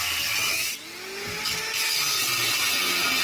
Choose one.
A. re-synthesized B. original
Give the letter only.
B